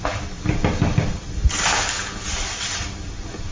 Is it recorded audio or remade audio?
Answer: recorded